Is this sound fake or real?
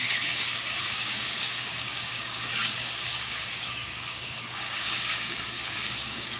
fake